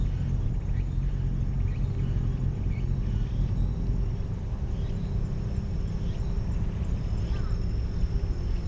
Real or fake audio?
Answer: real